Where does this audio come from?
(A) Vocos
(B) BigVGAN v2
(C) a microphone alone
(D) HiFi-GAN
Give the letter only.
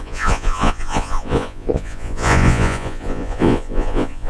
A